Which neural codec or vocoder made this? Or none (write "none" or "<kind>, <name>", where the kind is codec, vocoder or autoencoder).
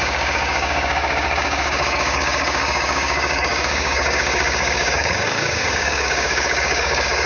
codec, DAC